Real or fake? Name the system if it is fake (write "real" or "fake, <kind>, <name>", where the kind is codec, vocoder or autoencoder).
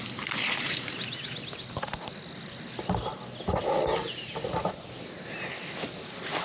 real